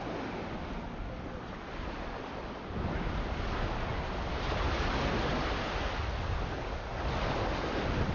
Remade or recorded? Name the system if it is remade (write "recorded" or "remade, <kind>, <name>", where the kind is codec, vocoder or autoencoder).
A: recorded